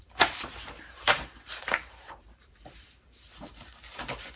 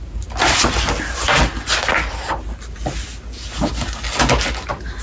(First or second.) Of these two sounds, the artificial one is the first